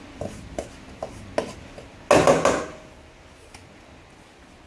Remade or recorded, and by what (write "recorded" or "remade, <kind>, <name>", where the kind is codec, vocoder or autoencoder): recorded